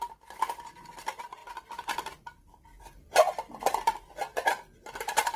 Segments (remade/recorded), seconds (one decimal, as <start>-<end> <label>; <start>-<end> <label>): 0.0-5.4 recorded